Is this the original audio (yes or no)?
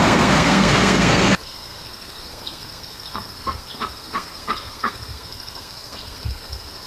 no